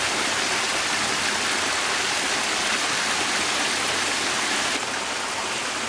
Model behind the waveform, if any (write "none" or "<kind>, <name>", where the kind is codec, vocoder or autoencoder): none